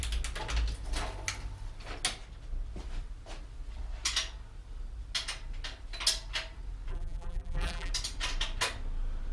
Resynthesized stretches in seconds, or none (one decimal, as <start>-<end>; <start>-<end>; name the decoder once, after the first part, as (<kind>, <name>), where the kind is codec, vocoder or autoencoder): 6.9-7.9 (vocoder, BigVGAN v2)